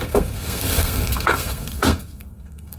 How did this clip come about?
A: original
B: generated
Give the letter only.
B